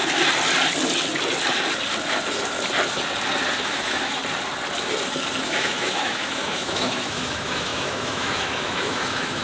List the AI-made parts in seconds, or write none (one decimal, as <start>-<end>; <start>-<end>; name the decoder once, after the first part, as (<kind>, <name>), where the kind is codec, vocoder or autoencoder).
3.6-4.2 (autoencoder, DAC-VAE); 5.4-9.4